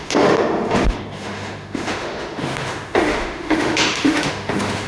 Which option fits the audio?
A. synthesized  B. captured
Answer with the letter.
A